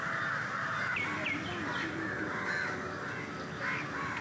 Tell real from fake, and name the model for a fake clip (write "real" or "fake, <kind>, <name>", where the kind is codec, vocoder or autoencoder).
real